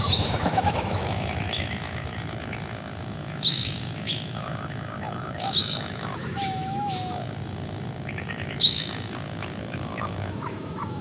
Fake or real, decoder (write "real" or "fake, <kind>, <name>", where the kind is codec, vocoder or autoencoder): fake, autoencoder, DAC-VAE